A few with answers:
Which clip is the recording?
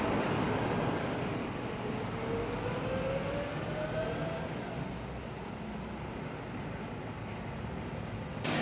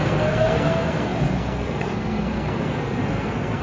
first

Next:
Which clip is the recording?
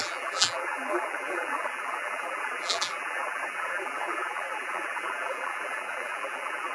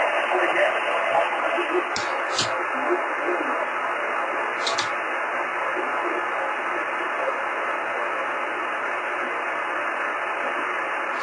second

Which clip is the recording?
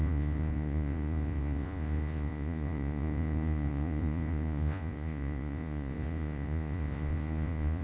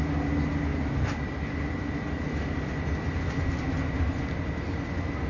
second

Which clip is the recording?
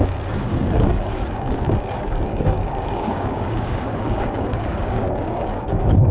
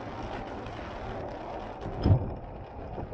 second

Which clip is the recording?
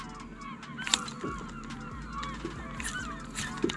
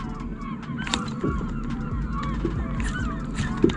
first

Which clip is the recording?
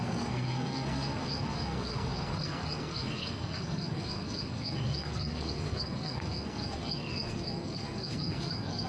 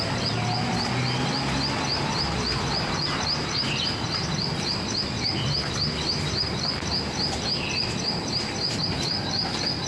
second